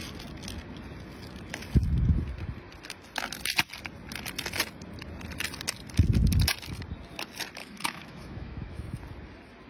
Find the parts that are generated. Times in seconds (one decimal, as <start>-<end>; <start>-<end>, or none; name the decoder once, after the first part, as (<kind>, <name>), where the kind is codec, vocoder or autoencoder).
7.6-9.0 (autoencoder, DAC-VAE)